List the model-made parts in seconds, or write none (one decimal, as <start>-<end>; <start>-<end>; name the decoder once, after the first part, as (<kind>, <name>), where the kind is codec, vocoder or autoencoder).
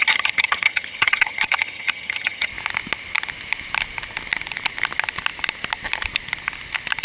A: 0.0-2.5 (vocoder, HiFi-GAN)